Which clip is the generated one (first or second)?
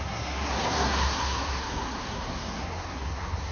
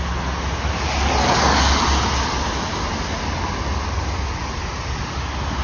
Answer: first